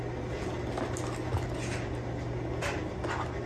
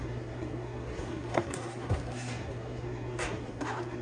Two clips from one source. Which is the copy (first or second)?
second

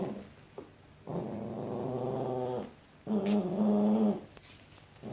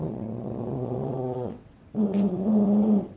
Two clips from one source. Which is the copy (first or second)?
second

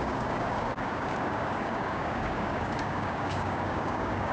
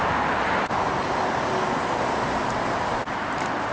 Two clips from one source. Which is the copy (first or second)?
first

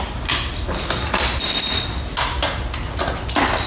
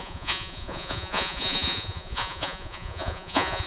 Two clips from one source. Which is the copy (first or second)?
second